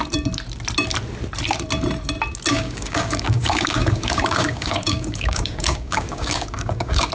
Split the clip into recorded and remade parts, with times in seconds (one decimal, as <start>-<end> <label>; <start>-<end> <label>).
0.0-2.5 recorded; 2.5-7.1 remade